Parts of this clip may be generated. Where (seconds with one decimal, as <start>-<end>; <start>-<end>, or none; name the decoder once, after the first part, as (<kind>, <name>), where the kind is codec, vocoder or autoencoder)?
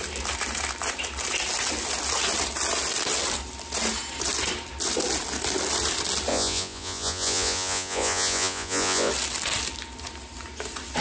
6.3-9.1 (vocoder, Vocos)